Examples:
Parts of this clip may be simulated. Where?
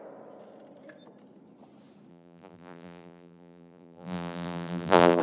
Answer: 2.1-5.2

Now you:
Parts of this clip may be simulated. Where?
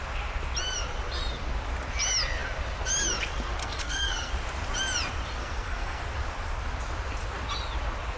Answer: 3.6-4.3; 5.4-6.0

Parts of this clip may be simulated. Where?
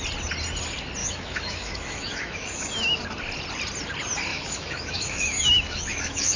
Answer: 1.0-3.0; 4.3-6.4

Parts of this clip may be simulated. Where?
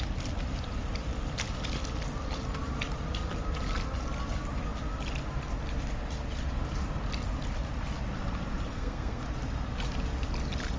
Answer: 8.7-9.2